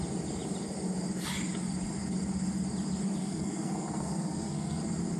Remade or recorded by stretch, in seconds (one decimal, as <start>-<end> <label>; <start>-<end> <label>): 0.0-3.2 recorded; 3.2-4.8 remade; 4.8-5.2 recorded